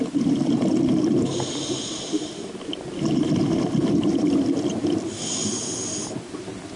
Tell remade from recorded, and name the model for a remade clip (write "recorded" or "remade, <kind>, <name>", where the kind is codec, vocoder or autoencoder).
recorded